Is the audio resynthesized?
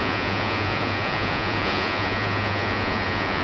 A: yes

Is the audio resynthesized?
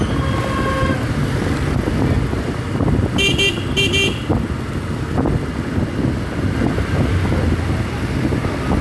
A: no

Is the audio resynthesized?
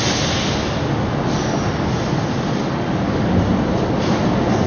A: no